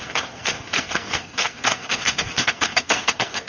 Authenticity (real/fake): fake